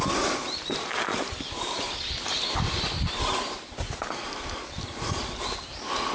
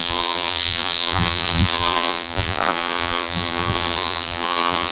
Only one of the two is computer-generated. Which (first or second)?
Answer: second